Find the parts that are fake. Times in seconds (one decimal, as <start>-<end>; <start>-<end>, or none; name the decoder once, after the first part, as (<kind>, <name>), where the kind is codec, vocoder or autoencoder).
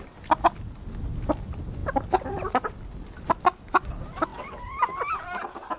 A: none